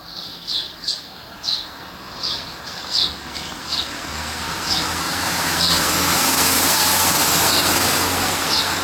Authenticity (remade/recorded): remade